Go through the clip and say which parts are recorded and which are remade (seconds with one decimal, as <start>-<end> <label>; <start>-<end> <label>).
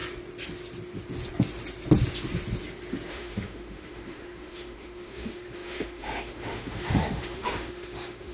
0.0-3.1 recorded; 3.1-8.3 remade